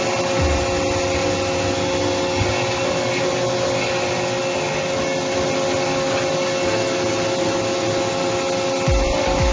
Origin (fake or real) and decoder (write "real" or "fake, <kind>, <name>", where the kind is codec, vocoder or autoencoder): real